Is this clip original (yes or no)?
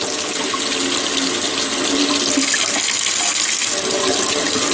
yes